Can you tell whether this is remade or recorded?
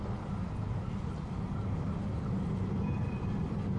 recorded